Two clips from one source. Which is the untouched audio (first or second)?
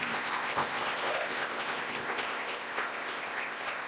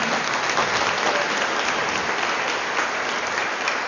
second